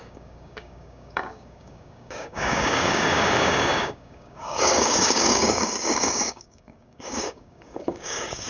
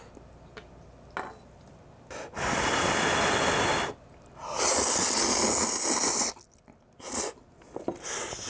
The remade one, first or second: first